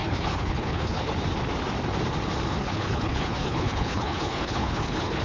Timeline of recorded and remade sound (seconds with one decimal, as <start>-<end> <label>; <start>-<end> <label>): 0.0-1.1 remade; 1.1-2.6 recorded; 2.6-5.2 remade